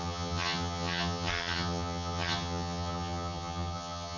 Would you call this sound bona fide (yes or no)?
no